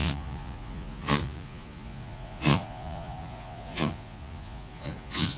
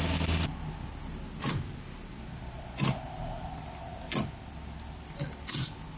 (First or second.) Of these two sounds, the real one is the second